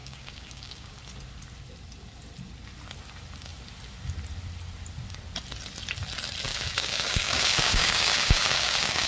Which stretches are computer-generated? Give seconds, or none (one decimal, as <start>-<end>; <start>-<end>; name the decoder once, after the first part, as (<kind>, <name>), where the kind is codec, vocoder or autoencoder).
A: 0.0-1.0 (codec, DAC); 6.5-9.1